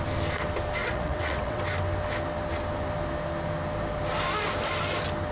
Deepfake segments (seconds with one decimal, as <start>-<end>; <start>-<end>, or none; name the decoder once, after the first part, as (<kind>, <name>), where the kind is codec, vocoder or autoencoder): 0.8-1.6 (vocoder, WaveNeXt)